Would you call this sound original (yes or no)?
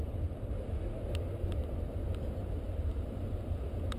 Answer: yes